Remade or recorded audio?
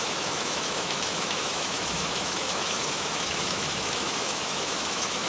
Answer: remade